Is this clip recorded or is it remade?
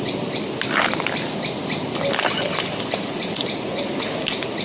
recorded